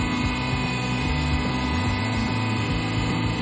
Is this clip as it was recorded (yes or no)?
yes